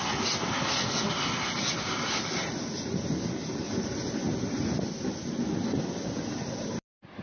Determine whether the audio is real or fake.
real